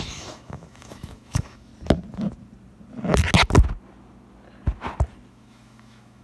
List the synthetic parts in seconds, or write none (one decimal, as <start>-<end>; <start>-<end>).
0.0-1.7; 5.3-6.2